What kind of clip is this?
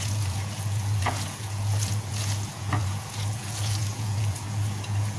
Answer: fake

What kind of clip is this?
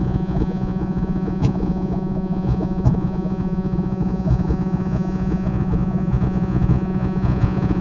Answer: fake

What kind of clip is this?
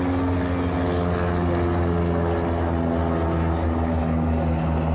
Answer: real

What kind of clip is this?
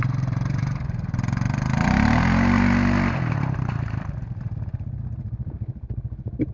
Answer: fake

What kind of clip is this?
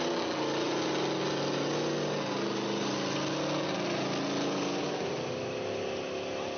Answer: real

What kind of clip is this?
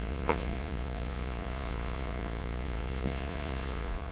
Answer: fake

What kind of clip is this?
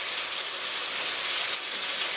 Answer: real